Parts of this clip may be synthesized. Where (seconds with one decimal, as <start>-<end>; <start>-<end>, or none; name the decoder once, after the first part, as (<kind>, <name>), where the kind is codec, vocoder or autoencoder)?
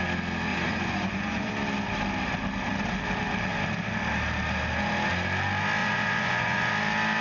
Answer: 0.5-1.5 (vocoder, Vocos); 5.8-6.7